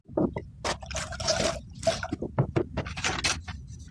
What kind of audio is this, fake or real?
real